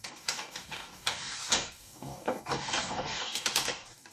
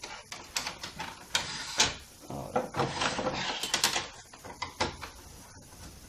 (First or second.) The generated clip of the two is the first